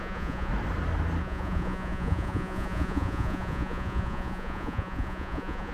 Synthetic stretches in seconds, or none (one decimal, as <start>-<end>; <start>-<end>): 0.0-0.5; 1.2-5.7